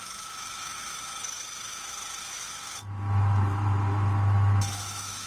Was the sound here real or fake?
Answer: fake